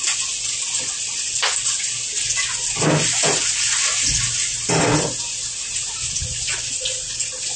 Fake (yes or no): no